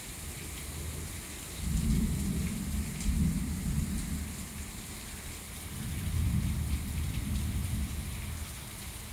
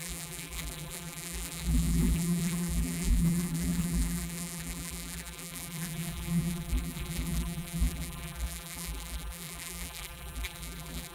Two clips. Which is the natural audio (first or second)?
first